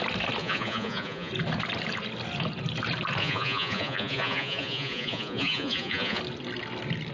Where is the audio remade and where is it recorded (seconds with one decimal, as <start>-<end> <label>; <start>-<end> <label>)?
0.0-0.4 recorded; 0.4-1.3 remade; 1.3-3.2 recorded; 3.2-6.2 remade; 6.2-7.1 recorded